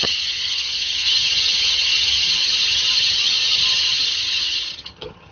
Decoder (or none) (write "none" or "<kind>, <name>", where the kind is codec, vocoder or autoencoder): vocoder, HiFi-GAN